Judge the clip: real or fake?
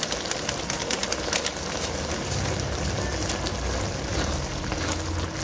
real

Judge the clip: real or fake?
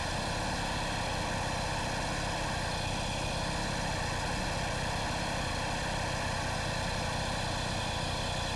real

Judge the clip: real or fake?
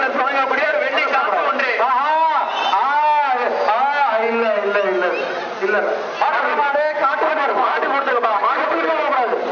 real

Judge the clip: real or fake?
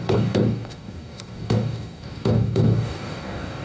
fake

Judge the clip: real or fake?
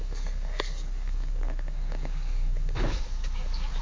fake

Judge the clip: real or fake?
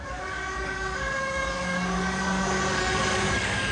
fake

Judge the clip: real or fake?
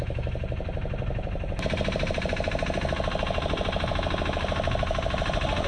real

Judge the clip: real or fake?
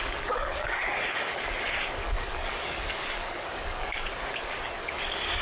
fake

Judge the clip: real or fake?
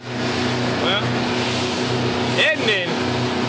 real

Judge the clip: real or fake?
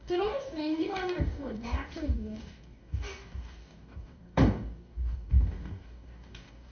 fake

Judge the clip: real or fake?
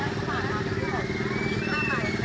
real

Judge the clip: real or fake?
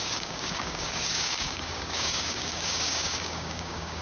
fake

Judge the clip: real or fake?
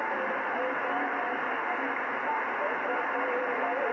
real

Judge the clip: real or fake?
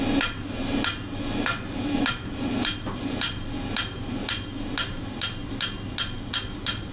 real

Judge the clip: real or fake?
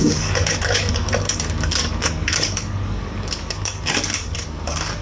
fake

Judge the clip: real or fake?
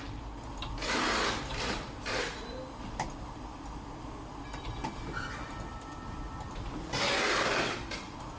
real